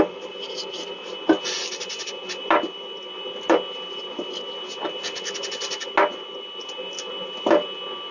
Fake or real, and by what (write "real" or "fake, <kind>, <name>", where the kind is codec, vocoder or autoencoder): real